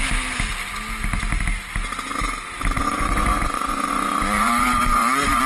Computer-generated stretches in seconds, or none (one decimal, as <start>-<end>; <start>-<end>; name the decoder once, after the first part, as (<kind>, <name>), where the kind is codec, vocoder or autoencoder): 2.8-5.5 (vocoder, Vocos)